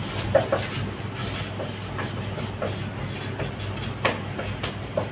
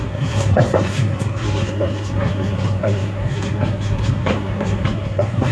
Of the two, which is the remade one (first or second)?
second